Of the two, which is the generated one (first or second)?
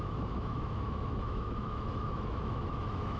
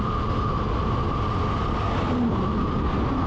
first